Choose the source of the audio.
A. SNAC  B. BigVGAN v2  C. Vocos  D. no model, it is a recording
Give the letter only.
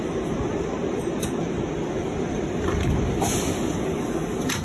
B